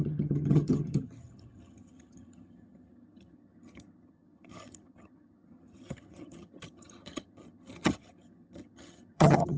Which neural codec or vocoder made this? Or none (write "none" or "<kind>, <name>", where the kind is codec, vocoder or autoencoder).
vocoder, HiFi-GAN